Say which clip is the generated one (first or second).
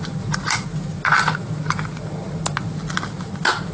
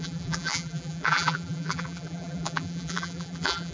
second